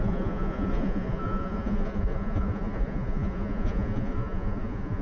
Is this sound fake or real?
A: fake